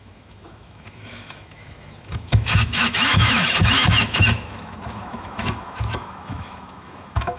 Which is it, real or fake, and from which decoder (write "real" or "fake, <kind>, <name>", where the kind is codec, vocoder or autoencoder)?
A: fake, autoencoder, DAC-VAE